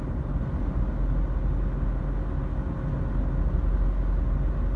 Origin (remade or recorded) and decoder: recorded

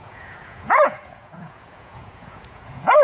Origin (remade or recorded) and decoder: remade, vocoder, Vocos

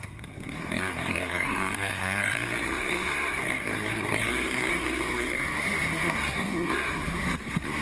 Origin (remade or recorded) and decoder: remade, codec, SNAC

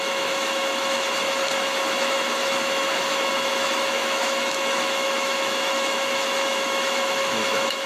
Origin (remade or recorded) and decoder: remade, autoencoder, DAC-VAE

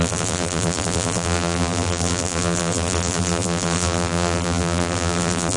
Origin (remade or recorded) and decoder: remade, vocoder, BigVGAN v2